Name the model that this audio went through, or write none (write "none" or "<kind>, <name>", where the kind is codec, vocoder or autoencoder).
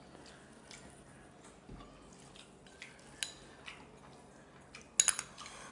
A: none